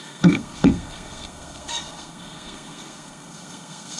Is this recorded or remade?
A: remade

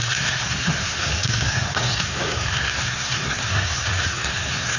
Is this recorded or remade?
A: remade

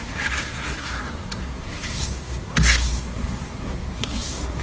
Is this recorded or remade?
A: remade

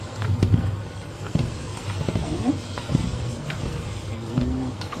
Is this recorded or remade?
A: remade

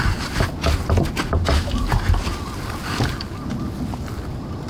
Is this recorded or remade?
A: recorded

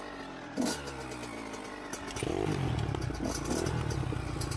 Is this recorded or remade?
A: recorded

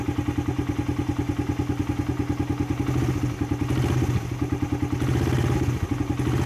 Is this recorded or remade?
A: recorded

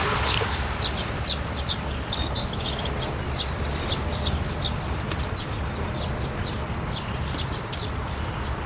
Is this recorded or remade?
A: recorded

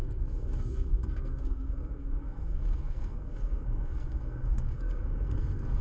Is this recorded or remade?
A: remade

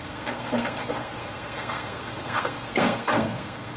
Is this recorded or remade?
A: remade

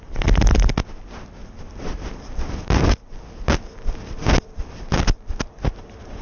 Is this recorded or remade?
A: recorded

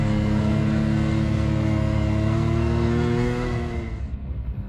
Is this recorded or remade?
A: remade